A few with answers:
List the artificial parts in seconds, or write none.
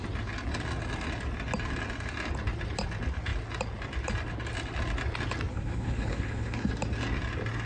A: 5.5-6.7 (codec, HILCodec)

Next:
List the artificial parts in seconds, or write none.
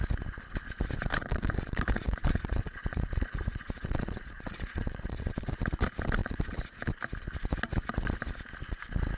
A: 1.1-5.6 (vocoder, Vocos); 6.2-6.9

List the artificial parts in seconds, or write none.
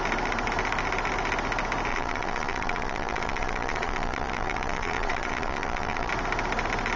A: 1.9-6.1 (vocoder, Vocos)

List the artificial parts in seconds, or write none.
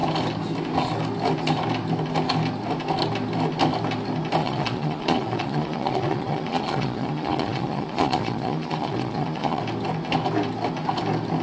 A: 4.4-9.6 (vocoder, Vocos)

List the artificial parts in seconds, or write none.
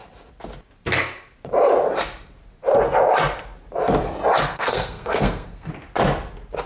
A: 4.5-5.7 (codec, SNAC)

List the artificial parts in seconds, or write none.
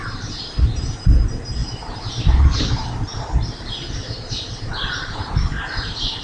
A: 0.0-6.2 (vocoder, BigVGAN v2)